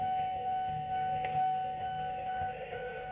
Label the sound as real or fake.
fake